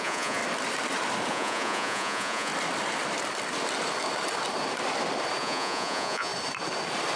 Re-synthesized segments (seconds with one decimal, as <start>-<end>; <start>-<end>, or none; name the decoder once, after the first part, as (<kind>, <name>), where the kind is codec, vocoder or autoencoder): 0.0-0.4 (vocoder, Vocos); 1.3-2.5; 5.4-6.3